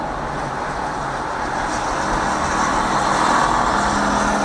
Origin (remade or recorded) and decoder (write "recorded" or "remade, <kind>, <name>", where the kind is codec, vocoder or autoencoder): recorded